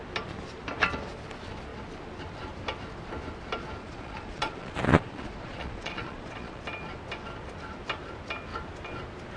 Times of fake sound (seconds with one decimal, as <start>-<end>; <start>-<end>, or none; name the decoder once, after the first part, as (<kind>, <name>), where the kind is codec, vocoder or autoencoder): 3.8-6.6 (vocoder, Vocos)